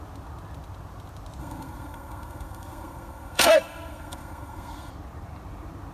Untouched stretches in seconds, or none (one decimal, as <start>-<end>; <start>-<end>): 0.0-1.4; 4.9-5.9